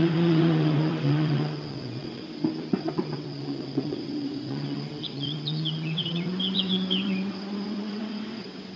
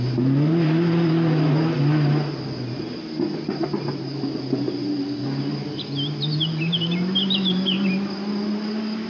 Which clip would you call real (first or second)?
second